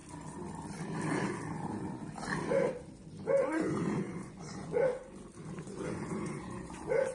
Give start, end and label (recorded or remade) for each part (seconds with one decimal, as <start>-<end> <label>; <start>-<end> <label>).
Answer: 0.0-3.6 recorded; 3.6-4.9 remade; 4.9-5.6 recorded; 5.6-7.1 remade